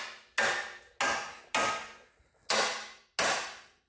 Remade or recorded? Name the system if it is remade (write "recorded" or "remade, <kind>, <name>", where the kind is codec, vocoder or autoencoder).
recorded